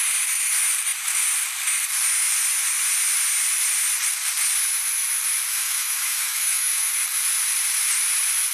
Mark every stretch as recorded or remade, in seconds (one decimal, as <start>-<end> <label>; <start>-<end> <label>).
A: 0.0-5.5 recorded; 5.5-6.9 remade; 6.9-8.5 recorded